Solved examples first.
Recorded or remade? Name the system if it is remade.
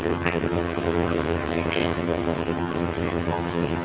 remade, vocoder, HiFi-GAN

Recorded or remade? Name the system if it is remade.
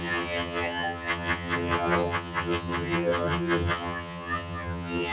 remade, vocoder, HiFi-GAN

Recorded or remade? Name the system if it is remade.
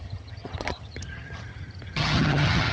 remade, vocoder, HiFi-GAN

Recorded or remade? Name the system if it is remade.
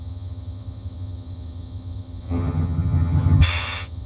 remade, vocoder, HiFi-GAN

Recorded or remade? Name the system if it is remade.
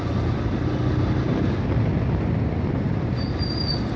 recorded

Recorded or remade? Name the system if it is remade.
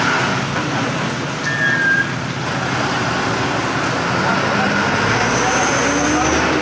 recorded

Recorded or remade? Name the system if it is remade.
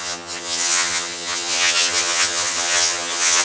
remade, vocoder, HiFi-GAN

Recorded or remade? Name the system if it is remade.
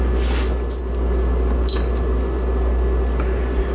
recorded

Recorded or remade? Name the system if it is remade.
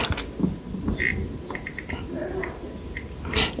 recorded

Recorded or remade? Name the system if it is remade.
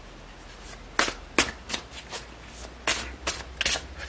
recorded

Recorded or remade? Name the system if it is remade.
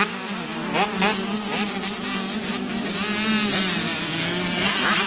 recorded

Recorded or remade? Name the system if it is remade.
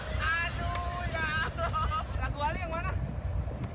recorded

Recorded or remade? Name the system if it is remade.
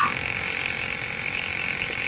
recorded